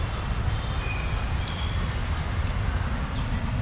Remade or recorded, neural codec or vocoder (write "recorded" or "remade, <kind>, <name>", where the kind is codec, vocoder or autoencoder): recorded